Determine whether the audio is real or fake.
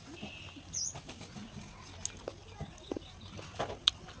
real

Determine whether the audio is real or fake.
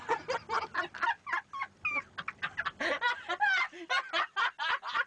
real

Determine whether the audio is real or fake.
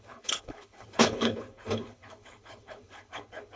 fake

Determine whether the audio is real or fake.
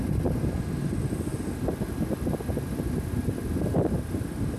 real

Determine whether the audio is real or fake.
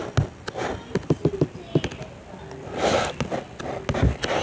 real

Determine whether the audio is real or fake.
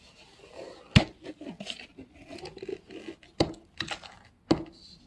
real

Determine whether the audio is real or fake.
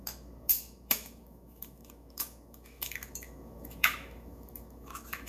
fake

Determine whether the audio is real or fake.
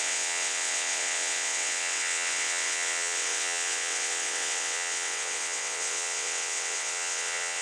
fake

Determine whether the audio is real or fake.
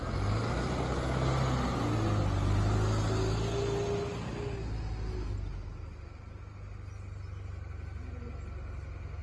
real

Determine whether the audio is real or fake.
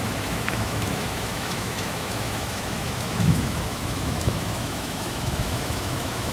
fake